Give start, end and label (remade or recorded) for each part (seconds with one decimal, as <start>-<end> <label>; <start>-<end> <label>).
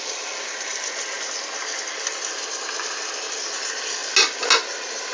0.0-5.1 recorded